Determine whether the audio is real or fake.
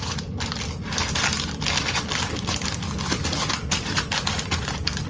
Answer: fake